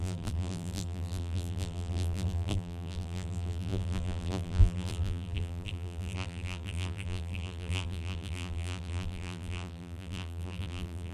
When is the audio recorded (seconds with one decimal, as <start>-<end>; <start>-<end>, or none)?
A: none